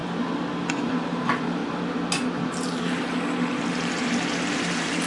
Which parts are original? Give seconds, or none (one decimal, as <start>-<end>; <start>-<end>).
0.0-0.7; 1.6-3.7